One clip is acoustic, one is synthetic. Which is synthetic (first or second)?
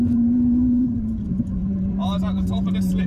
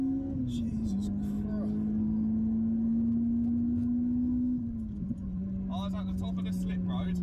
first